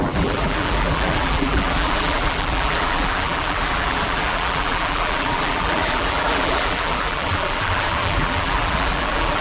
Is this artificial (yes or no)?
yes